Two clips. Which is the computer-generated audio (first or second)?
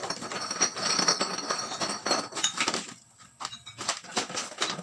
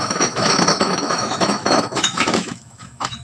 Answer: second